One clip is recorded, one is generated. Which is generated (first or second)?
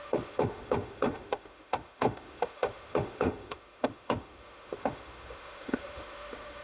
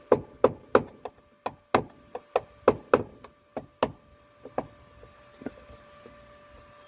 first